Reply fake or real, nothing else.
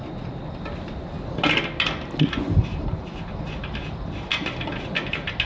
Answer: real